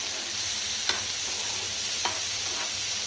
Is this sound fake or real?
real